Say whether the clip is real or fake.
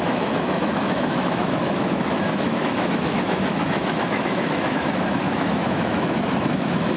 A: fake